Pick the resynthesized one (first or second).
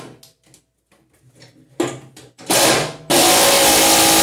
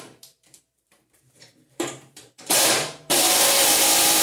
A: second